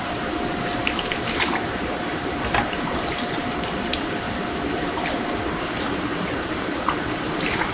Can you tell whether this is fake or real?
fake